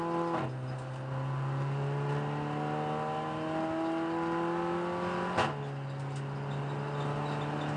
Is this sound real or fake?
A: real